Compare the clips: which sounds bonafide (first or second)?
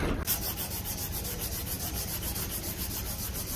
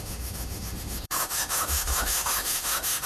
first